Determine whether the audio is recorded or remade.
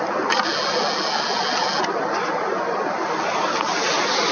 recorded